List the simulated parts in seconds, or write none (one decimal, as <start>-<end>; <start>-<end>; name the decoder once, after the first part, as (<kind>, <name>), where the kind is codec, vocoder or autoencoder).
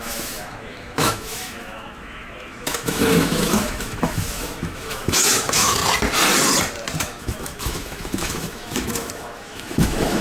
0.0-5.8 (autoencoder, DAC-VAE); 7.0-10.2